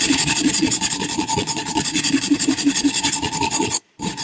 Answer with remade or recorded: remade